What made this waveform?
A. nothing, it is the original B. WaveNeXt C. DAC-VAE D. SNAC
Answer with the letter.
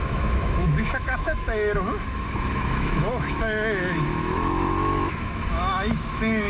C